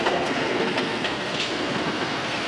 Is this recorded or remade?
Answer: remade